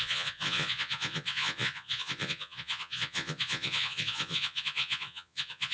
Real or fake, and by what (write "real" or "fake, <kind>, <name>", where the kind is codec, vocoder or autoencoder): fake, vocoder, Vocos